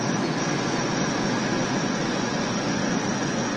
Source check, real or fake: fake